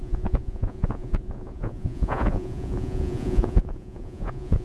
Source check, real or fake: fake